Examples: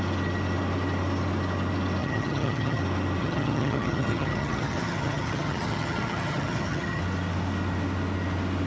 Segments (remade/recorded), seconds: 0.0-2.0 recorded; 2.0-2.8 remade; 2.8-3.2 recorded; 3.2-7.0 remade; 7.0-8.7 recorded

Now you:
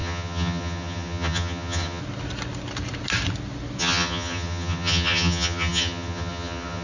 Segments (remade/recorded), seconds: 0.0-2.0 remade; 2.0-3.8 recorded; 3.8-6.8 remade

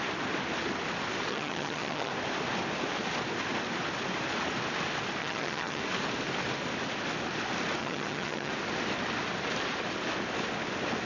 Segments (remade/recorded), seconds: 0.0-1.3 recorded; 1.3-2.1 remade; 2.1-5.2 recorded; 5.2-5.8 remade; 5.8-7.8 recorded; 7.8-8.5 remade; 8.5-11.1 recorded

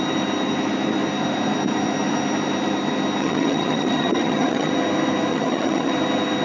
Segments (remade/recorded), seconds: 0.0-3.2 recorded; 3.2-4.7 remade; 4.7-5.3 recorded; 5.3-5.9 remade; 5.9-6.4 recorded

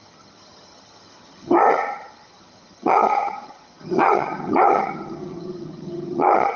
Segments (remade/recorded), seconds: 0.0-6.6 remade

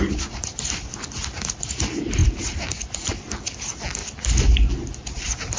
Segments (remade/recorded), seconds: 0.0-5.6 recorded